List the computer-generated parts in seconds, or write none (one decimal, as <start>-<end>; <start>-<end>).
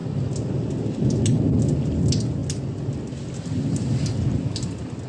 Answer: none